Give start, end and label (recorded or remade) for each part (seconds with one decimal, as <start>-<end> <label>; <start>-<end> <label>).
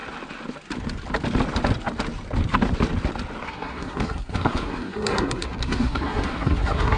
0.0-3.4 recorded; 3.4-7.0 remade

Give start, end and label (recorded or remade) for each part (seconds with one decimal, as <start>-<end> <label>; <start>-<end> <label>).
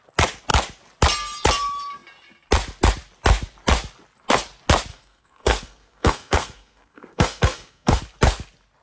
0.0-4.9 recorded; 4.9-8.0 remade; 8.0-8.8 recorded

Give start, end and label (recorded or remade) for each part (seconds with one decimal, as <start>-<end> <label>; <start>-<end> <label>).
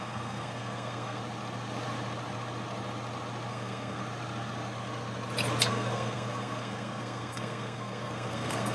0.0-1.2 remade; 1.2-3.5 recorded; 3.5-4.0 remade; 4.0-5.7 recorded; 5.7-8.7 remade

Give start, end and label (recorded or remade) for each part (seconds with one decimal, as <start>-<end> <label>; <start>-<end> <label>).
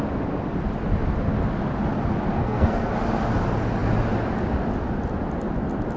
0.0-2.3 recorded; 2.3-2.9 remade; 2.9-6.0 recorded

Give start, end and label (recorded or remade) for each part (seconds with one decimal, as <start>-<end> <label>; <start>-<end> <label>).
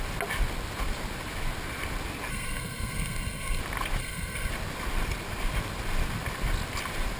0.0-2.3 recorded; 2.3-3.6 remade; 3.6-4.0 recorded; 4.0-4.5 remade; 4.5-7.2 recorded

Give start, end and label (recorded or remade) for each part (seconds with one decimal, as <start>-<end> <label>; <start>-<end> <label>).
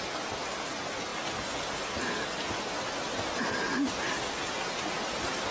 0.0-5.5 recorded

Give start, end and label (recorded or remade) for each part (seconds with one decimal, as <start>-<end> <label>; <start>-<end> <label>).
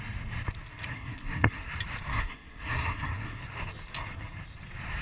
0.0-0.9 recorded; 0.9-1.7 remade; 1.7-2.1 recorded; 2.1-3.4 remade; 3.4-5.0 recorded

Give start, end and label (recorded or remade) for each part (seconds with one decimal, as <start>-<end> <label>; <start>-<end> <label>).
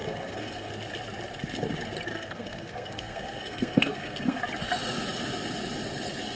0.0-0.7 remade; 0.7-2.1 recorded; 2.1-4.4 remade; 4.4-6.4 recorded